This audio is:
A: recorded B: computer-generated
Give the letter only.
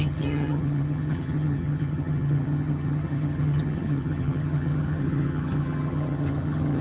B